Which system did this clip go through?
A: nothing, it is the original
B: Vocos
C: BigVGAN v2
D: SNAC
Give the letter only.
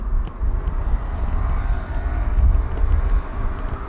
A